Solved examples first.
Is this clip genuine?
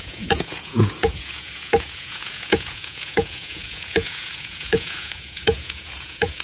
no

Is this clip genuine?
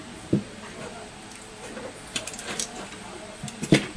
no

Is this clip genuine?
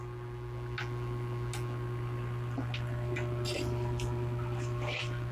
yes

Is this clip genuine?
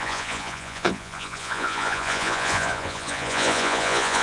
no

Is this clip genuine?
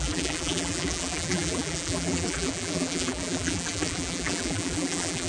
no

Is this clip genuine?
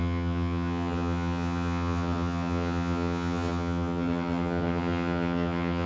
no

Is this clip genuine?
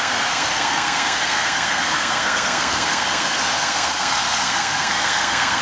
no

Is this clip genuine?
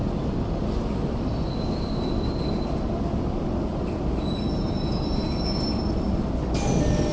yes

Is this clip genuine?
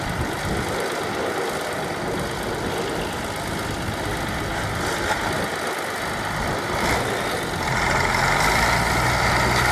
yes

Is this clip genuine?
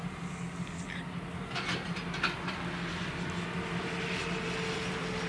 yes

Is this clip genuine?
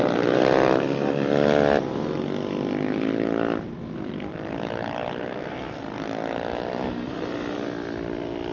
yes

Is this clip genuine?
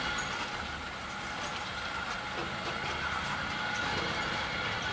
yes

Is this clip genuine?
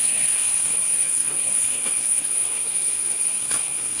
no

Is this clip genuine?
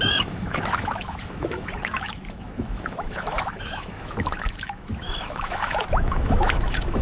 no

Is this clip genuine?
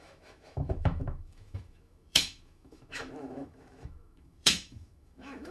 no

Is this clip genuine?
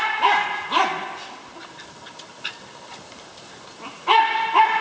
yes